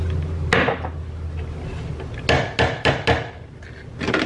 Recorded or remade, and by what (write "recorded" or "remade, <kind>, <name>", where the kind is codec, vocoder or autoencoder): recorded